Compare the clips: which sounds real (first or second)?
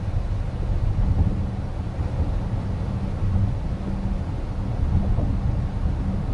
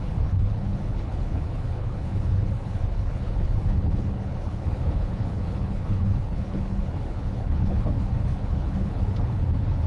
first